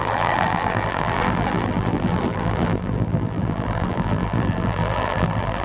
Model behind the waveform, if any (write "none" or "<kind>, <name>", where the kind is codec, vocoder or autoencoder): vocoder, BigVGAN v2